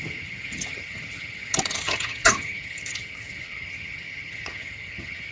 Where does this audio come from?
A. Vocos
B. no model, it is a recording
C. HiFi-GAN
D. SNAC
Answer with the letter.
C